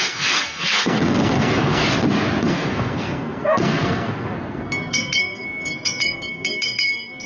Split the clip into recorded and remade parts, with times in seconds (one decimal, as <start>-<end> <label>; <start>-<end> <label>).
0.0-1.8 remade; 1.8-2.4 recorded; 2.4-7.3 remade